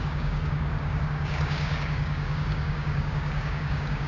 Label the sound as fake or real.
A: fake